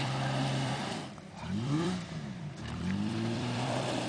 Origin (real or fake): fake